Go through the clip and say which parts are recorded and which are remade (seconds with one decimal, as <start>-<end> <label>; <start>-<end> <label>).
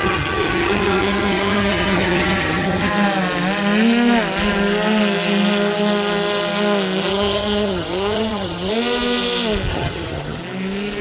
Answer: 0.0-2.9 remade; 2.9-7.1 recorded; 7.1-8.7 remade; 8.7-9.7 recorded; 9.7-10.4 remade; 10.4-11.0 recorded